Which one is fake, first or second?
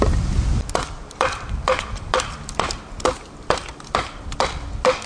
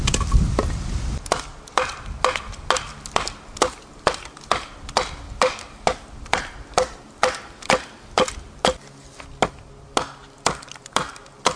first